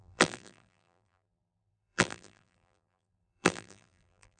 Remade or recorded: remade